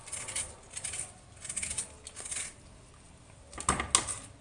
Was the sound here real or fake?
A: real